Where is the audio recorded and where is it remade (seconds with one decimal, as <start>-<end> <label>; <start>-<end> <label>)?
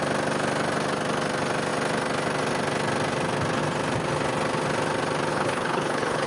0.0-5.3 recorded; 5.3-6.3 remade